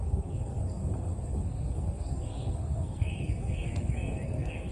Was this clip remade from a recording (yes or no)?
yes